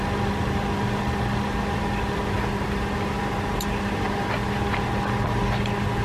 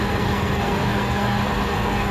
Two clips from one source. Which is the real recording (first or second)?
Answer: first